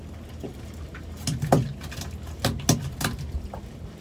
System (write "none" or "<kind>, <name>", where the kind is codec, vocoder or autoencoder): none